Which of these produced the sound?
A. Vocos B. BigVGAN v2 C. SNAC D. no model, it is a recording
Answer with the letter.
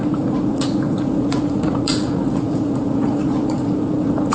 A